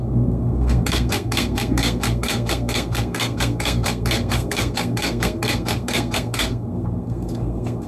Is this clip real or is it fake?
fake